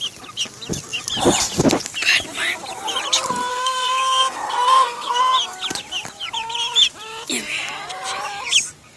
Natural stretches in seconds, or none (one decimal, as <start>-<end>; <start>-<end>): 0.0-3.5; 5.2-9.0